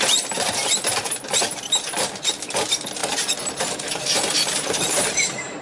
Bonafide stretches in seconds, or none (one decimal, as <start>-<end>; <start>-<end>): 0.6-2.0